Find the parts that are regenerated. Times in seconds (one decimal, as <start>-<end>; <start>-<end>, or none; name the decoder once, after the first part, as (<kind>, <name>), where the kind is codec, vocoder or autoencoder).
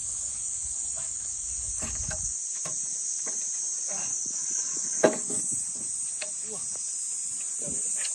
0.0-2.4 (codec, DAC); 4.1-5.4